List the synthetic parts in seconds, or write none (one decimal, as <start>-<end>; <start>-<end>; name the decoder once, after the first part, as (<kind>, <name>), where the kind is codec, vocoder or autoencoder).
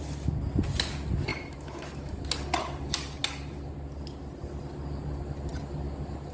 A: 1.3-2.2 (autoencoder, DAC-VAE)